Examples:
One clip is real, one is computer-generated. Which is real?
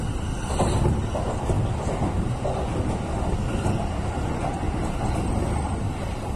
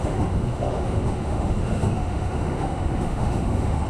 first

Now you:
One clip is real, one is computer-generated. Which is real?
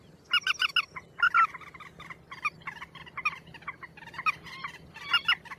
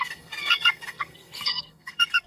first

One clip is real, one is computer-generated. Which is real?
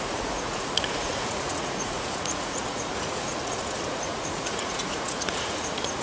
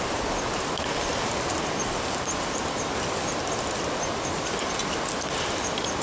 second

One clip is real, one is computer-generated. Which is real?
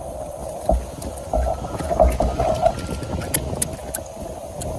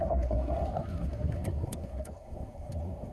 first